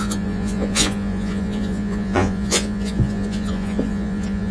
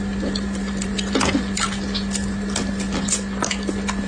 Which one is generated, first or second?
first